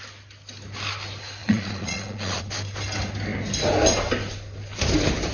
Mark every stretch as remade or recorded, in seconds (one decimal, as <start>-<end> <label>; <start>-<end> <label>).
0.0-1.4 recorded; 1.4-2.5 remade; 2.5-5.3 recorded